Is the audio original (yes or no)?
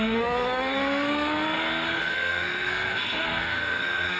no